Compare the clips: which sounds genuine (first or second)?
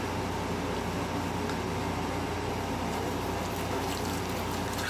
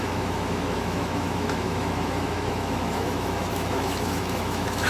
first